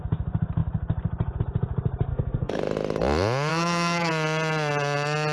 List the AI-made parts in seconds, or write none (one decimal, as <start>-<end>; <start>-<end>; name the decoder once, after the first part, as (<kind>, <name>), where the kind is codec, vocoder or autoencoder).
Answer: 2.1-2.6 (codec, SNAC); 3.5-4.1